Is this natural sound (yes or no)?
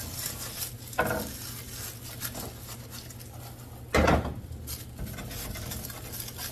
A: yes